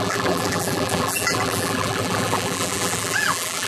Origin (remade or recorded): remade